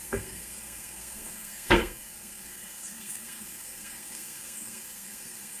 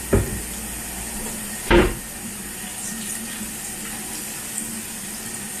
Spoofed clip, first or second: first